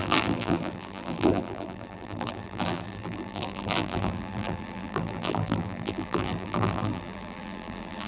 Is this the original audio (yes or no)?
no